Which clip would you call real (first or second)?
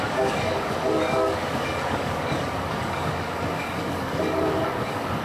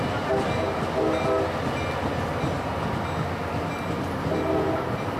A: second